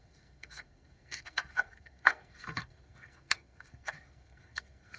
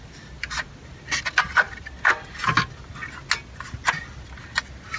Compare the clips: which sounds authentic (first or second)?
second